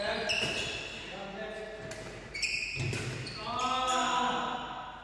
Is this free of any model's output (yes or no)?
yes